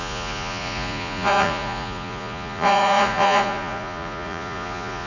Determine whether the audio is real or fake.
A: fake